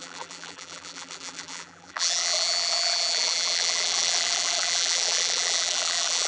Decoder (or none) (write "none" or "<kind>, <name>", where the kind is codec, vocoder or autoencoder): vocoder, BigVGAN v2